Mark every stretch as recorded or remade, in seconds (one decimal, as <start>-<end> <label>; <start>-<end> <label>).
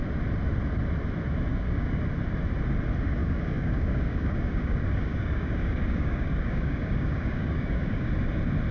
0.0-1.5 recorded; 1.5-2.0 remade; 2.0-3.2 recorded; 3.2-8.1 remade; 8.1-8.7 recorded